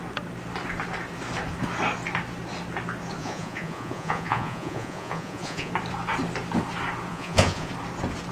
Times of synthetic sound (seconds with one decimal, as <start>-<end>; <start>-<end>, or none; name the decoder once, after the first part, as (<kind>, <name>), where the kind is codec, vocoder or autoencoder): 3.2-5.7 (vocoder, Vocos); 7.1-7.7